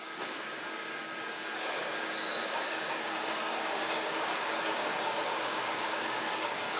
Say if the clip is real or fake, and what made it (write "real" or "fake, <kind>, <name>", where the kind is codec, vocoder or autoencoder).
fake, codec, DAC